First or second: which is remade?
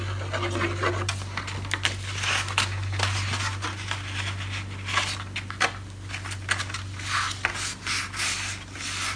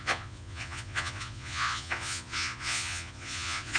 second